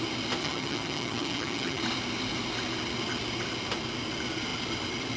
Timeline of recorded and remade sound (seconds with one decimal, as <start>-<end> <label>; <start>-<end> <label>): 0.0-0.4 recorded; 0.4-1.8 remade; 1.8-5.2 recorded

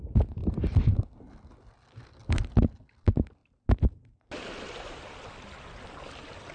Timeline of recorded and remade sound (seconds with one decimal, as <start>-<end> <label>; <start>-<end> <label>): 0.0-6.5 recorded

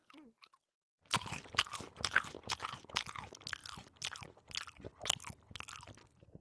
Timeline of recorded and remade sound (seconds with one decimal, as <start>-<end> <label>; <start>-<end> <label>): 0.0-6.4 recorded

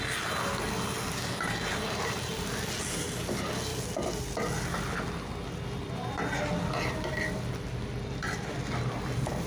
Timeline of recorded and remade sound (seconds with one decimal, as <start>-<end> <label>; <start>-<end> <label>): 0.0-9.5 recorded

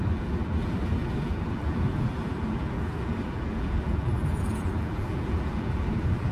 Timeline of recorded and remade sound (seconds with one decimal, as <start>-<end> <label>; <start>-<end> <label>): 0.0-6.3 remade

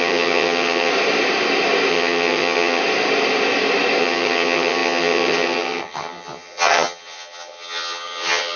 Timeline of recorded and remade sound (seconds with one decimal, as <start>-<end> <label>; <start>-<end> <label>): 0.0-0.9 remade; 0.9-1.9 recorded; 1.9-2.8 remade; 2.8-4.0 recorded; 4.0-8.6 remade